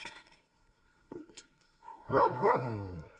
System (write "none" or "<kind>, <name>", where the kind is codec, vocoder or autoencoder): codec, SNAC